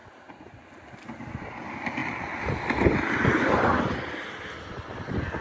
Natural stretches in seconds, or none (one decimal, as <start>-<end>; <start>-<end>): 0.0-5.4